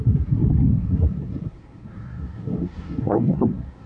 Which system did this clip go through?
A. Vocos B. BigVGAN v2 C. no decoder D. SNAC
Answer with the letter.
D